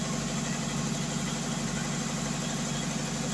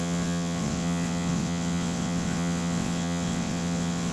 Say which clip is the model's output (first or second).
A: second